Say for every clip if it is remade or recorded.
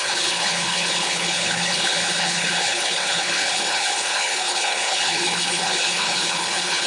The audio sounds remade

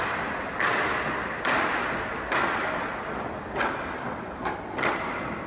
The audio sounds recorded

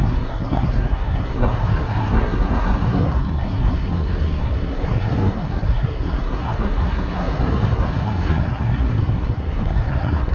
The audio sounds remade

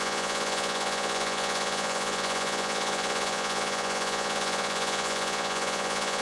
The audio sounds remade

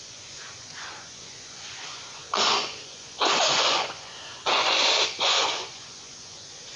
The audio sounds remade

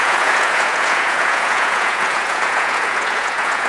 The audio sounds remade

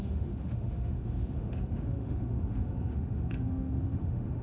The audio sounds remade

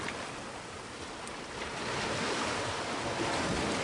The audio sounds recorded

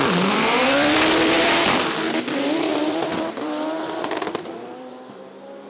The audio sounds remade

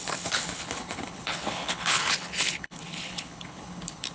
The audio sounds remade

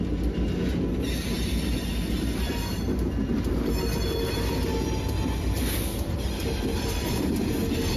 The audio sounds recorded